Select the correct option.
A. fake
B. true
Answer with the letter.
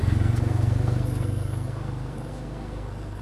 A